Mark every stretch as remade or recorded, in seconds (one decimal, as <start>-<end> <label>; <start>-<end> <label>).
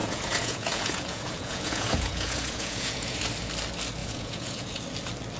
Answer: 0.0-3.2 remade; 3.2-4.0 recorded; 4.0-4.8 remade; 4.8-5.4 recorded